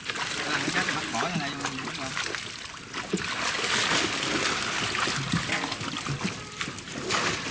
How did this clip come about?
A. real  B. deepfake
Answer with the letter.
A